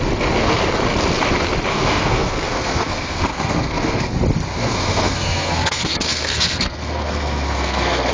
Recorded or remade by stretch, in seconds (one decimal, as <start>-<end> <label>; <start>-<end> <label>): 0.0-1.7 recorded; 1.7-4.1 remade; 4.1-4.6 recorded; 4.6-8.1 remade